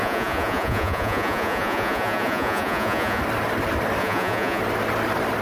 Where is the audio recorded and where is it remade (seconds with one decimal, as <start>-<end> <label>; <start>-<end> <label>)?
0.0-3.2 remade; 3.2-4.0 recorded; 4.0-4.6 remade; 4.6-5.4 recorded